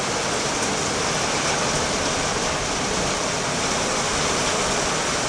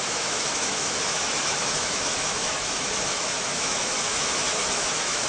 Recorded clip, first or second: first